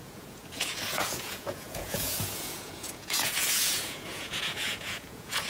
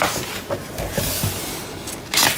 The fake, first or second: first